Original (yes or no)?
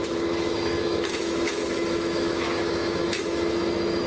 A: no